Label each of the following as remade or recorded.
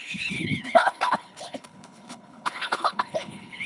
remade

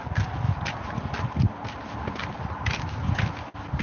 recorded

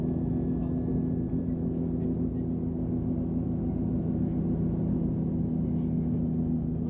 recorded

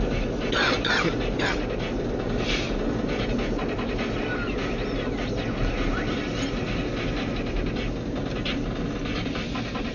recorded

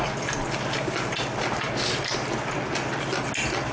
recorded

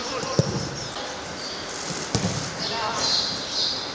recorded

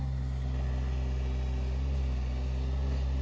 recorded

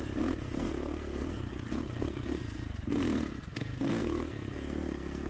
remade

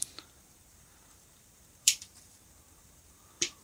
remade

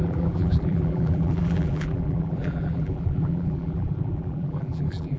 remade